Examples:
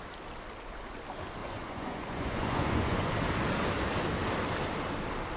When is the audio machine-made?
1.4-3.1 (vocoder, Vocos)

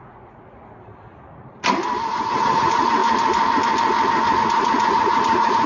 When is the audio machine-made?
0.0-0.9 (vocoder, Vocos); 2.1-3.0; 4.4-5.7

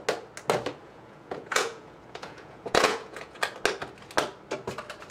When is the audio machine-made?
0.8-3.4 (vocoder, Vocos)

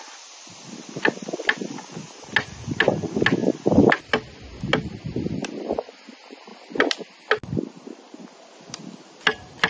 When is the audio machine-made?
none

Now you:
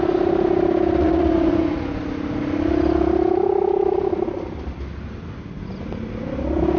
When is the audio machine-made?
1.0-2.0 (vocoder, Vocos)

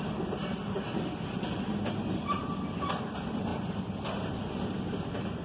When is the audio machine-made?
none

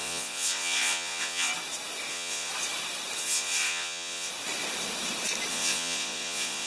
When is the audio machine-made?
0.0-1.5 (vocoder, Vocos); 2.1-2.5; 3.2-4.3; 5.5-6.7

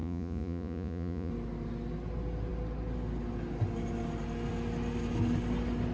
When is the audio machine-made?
0.0-1.3 (vocoder, Vocos)